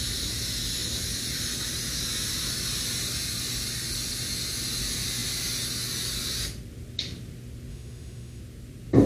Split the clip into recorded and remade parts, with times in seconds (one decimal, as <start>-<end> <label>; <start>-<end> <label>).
0.0-7.7 recorded; 7.7-8.4 remade; 8.4-9.1 recorded